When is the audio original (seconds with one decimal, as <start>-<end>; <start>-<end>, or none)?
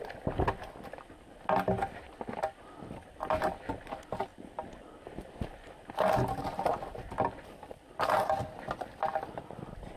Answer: 0.0-10.0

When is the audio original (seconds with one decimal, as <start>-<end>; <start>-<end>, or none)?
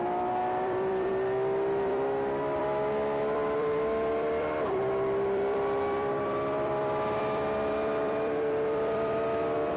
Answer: none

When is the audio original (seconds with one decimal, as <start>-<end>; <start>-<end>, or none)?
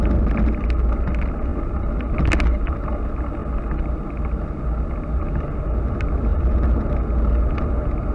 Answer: 0.0-1.5; 2.1-8.1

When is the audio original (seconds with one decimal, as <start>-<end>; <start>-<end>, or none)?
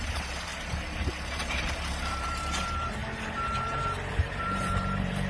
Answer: 0.5-1.7; 3.0-4.1